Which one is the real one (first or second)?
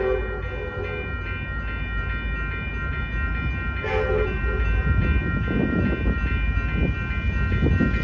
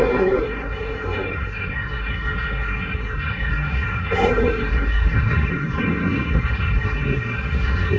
first